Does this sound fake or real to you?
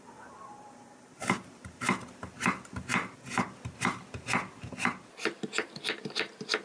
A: real